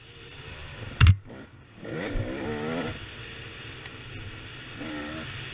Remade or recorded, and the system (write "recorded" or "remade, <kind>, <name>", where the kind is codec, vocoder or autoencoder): recorded